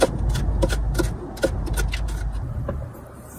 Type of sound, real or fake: real